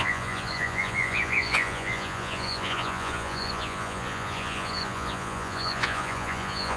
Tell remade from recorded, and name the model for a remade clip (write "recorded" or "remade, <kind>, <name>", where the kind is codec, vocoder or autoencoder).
remade, vocoder, Vocos